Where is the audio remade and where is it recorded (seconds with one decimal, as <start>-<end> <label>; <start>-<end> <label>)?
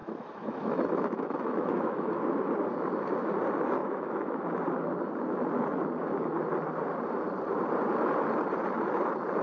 0.0-2.1 remade; 2.1-3.8 recorded; 3.8-4.6 remade; 4.6-9.4 recorded